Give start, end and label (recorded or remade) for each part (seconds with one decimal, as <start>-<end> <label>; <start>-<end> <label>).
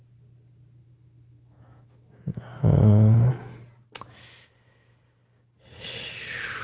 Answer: 0.0-0.8 recorded; 0.8-3.3 remade; 3.3-6.6 recorded